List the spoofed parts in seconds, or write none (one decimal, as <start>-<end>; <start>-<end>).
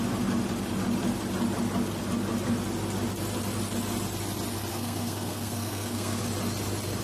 4.7-6.2